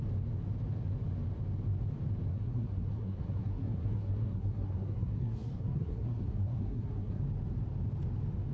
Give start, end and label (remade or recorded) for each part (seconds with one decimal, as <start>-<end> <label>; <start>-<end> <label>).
0.0-2.3 recorded; 2.3-7.2 remade; 7.2-8.5 recorded

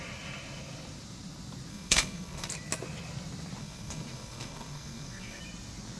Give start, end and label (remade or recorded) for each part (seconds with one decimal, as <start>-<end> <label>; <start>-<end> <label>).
0.0-1.7 recorded; 1.7-2.5 remade; 2.5-3.6 recorded; 3.6-5.4 remade; 5.4-6.0 recorded

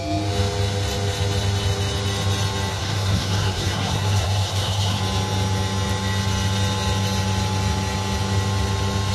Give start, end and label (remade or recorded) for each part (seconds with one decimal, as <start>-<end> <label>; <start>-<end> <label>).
0.0-2.7 recorded; 2.7-5.0 remade; 5.0-9.1 recorded